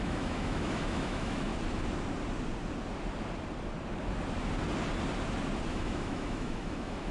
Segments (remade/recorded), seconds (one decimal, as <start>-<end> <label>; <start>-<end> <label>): 0.0-1.5 remade; 1.5-5.7 recorded; 5.7-7.1 remade